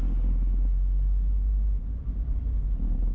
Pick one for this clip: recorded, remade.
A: recorded